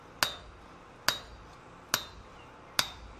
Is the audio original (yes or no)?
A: yes